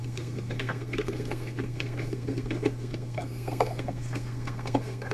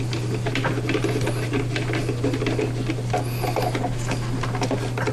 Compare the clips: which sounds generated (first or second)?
first